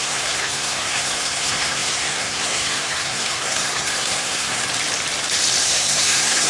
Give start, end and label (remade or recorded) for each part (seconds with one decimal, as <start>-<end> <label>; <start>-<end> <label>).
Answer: 0.0-4.6 remade; 4.6-5.6 recorded; 5.6-6.5 remade